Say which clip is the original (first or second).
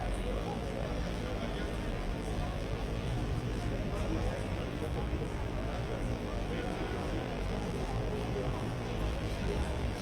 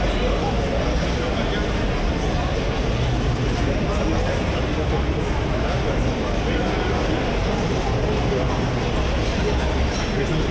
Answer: second